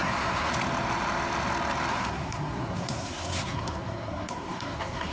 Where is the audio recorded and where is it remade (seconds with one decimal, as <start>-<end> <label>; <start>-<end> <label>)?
0.0-0.5 remade; 0.5-1.9 recorded; 1.9-5.1 remade